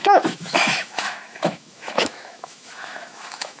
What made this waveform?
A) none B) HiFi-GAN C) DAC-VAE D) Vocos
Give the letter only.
C